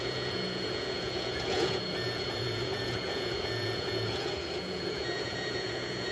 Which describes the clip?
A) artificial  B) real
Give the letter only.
A